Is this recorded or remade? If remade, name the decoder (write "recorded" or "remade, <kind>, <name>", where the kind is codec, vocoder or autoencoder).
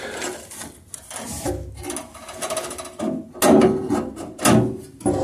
recorded